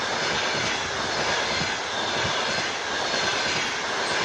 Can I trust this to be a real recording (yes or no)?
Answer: yes